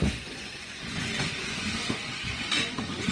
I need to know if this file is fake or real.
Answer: fake